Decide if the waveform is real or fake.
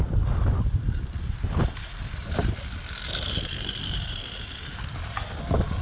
real